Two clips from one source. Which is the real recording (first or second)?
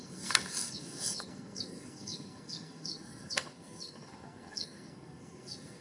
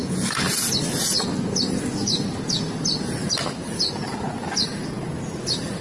second